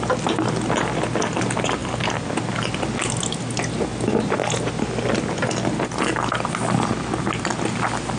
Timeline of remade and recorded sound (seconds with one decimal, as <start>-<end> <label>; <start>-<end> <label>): 0.0-8.2 recorded